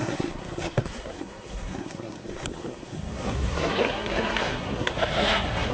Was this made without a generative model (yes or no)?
no